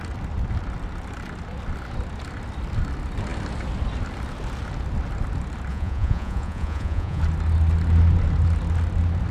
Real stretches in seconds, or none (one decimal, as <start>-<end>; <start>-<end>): 0.0-5.7; 7.2-9.3